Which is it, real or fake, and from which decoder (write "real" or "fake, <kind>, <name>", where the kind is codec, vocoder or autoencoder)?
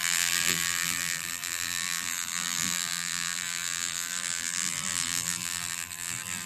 fake, vocoder, BigVGAN v2